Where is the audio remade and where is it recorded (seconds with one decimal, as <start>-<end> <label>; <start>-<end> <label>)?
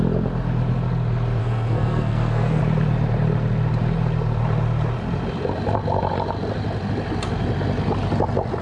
0.0-1.4 recorded; 1.4-2.6 remade; 2.6-8.6 recorded